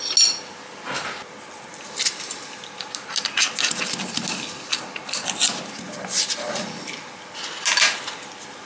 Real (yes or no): yes